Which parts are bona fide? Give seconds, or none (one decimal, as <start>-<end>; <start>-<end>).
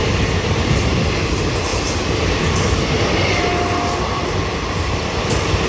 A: 0.0-1.7; 2.4-5.7